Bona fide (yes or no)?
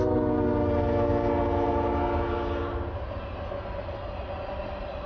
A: yes